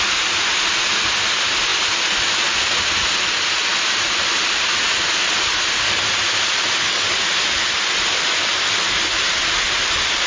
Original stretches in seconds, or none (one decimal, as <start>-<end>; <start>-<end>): 0.0-10.3